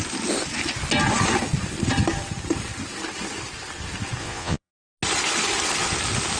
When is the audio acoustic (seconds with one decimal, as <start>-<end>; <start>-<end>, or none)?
0.0-4.2; 4.7-6.4